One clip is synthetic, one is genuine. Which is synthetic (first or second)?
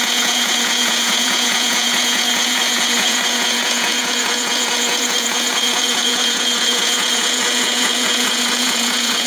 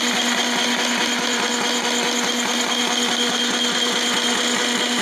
first